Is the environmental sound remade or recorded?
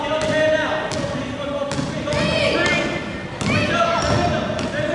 recorded